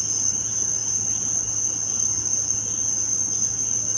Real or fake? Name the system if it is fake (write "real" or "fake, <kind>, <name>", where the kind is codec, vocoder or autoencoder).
real